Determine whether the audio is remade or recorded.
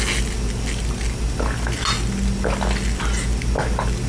recorded